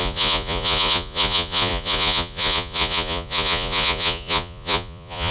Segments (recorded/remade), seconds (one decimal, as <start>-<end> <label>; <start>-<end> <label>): 0.0-5.3 remade